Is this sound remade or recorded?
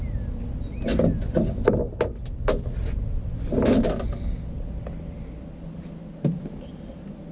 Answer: recorded